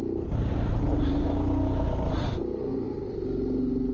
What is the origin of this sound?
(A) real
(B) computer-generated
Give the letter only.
A